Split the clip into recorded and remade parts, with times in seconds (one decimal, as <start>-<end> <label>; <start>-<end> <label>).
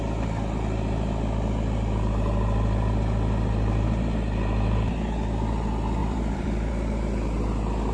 0.0-6.0 recorded; 6.0-6.7 remade; 6.7-7.9 recorded